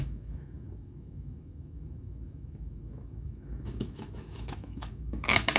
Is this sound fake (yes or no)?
yes